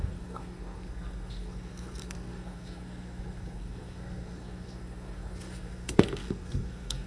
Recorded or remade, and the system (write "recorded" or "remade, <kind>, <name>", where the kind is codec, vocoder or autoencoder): remade, codec, SNAC